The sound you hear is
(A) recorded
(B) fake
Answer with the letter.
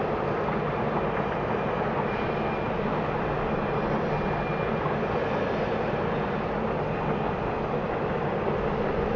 A